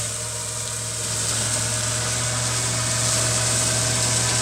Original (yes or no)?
yes